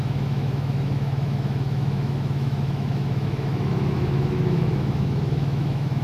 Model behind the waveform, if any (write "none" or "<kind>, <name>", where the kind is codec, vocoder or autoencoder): autoencoder, DAC-VAE